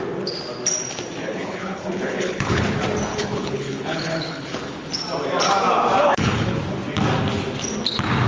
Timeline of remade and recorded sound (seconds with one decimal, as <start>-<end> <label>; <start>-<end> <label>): 0.0-1.2 recorded; 1.2-2.6 remade; 2.6-3.1 recorded; 3.1-4.9 remade; 4.9-6.0 recorded; 6.0-6.6 remade; 6.6-8.3 recorded